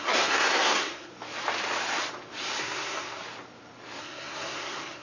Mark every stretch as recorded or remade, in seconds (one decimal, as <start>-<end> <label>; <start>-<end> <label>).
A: 0.0-1.1 remade; 1.1-2.6 recorded; 2.6-3.2 remade; 3.2-4.0 recorded; 4.0-5.0 remade